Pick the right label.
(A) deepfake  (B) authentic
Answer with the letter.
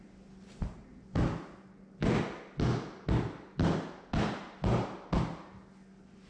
B